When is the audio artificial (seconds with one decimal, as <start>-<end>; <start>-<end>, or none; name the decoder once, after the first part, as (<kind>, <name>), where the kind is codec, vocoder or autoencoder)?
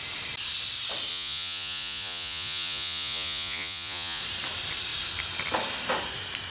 1.1-4.2 (vocoder, Vocos)